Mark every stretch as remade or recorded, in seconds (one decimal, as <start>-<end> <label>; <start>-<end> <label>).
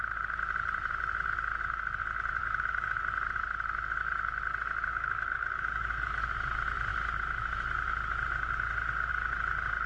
0.0-2.4 recorded; 2.4-3.0 remade; 3.0-4.9 recorded; 4.9-6.2 remade; 6.2-9.9 recorded